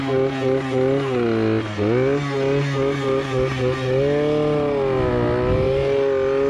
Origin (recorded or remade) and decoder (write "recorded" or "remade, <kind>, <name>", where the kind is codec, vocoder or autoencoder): recorded